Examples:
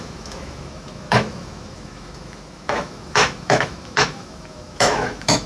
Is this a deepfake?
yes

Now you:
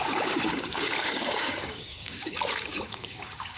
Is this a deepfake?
yes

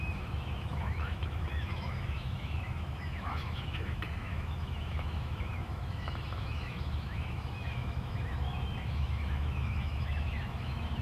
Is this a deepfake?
yes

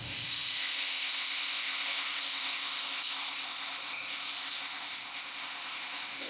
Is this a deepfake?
yes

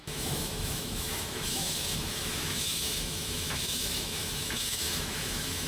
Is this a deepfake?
yes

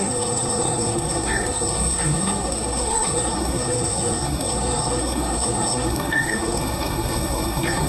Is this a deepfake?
yes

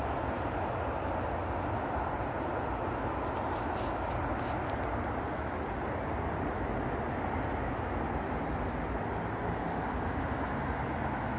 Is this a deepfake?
no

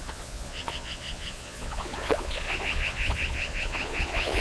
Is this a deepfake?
yes